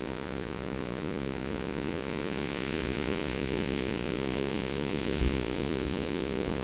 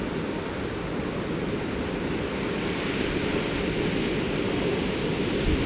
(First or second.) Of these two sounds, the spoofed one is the first